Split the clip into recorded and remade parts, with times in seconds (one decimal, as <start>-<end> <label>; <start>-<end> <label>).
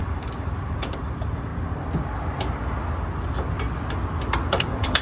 0.0-1.5 remade; 1.5-4.5 recorded; 4.5-5.0 remade